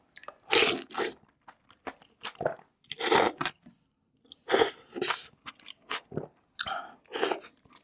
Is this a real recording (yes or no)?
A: yes